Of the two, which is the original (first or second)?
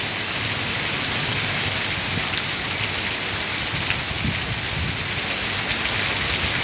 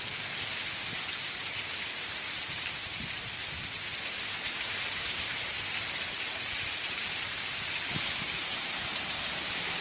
first